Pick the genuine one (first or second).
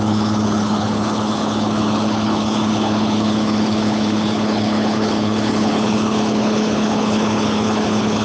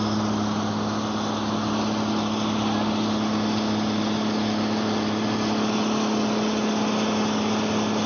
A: second